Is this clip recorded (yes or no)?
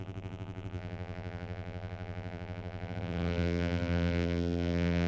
no